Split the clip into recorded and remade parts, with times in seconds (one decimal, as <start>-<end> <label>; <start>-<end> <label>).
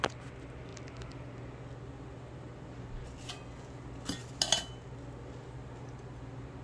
0.0-6.6 recorded